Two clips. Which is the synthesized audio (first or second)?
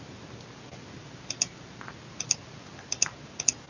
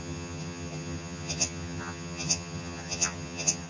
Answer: second